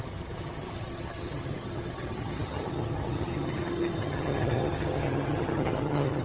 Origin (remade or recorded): remade